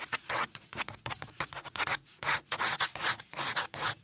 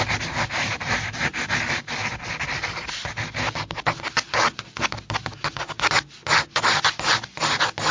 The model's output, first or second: first